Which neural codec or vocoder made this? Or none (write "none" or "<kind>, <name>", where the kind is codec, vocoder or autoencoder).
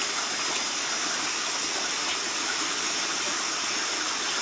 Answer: none